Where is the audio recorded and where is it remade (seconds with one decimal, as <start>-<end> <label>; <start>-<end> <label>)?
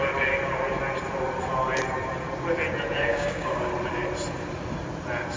0.0-3.1 recorded; 3.1-3.7 remade; 3.7-5.4 recorded